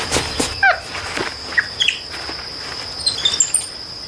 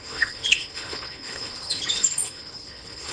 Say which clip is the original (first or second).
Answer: first